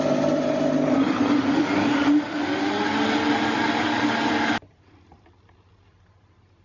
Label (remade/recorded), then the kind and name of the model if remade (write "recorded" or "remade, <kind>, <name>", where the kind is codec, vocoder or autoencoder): recorded